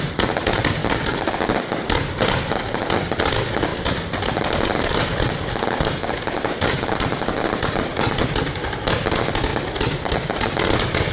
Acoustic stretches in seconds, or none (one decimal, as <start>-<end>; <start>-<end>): 0.0-0.8; 1.6-3.7; 7.9-11.1